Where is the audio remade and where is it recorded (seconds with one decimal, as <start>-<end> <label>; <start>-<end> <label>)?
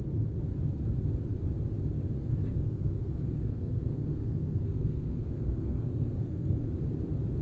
0.0-2.3 recorded; 2.3-6.7 remade; 6.7-7.4 recorded